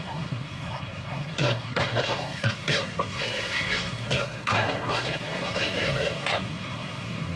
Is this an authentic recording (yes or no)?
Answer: no